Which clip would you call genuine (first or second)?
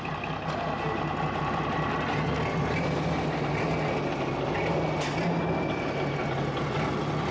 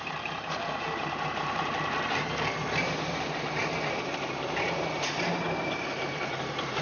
first